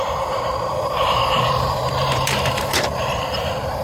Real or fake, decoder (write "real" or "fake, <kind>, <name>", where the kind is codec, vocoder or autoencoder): fake, vocoder, BigVGAN v2